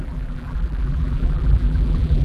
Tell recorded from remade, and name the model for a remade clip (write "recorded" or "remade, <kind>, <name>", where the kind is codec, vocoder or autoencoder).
remade, vocoder, BigVGAN v2